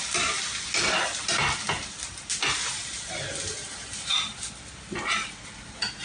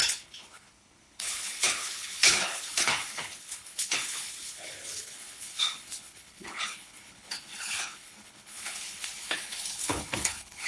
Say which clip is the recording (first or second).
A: first